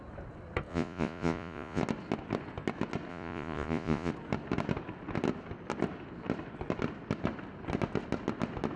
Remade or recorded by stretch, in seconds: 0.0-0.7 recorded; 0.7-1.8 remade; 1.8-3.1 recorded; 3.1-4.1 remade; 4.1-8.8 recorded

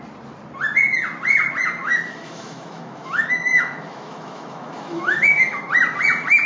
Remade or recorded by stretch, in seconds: 0.0-1.8 recorded; 1.8-5.7 remade; 5.7-6.5 recorded

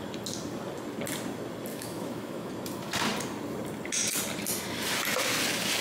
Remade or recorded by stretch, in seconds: 0.0-1.7 recorded; 1.7-2.5 remade; 2.5-5.8 recorded

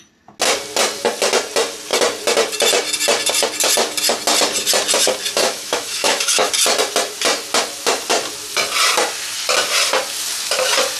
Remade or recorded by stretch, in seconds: 0.0-5.4 recorded; 5.4-6.5 remade; 6.5-11.0 recorded

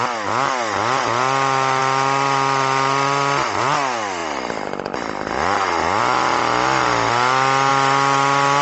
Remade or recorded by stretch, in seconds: 0.0-8.6 recorded

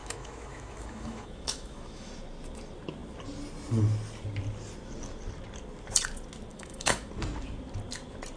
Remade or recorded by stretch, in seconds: 0.0-2.1 remade; 2.1-6.5 recorded; 6.5-7.1 remade; 7.1-8.4 recorded

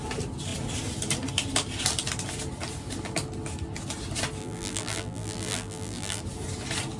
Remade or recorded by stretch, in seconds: 0.0-4.4 recorded; 4.4-6.2 remade; 6.2-7.0 recorded